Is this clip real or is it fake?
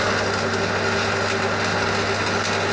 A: real